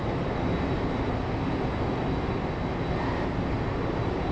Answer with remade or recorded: recorded